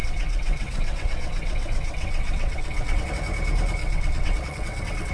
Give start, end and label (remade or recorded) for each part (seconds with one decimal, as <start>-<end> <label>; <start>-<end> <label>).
0.0-3.1 remade; 3.1-3.8 recorded; 3.8-5.1 remade